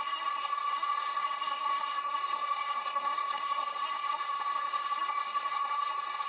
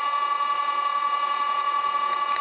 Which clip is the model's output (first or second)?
first